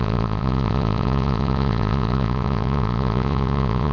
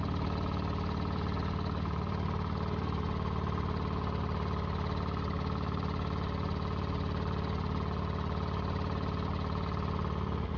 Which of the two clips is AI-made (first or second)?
first